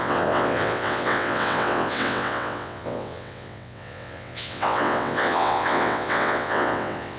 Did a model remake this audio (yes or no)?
yes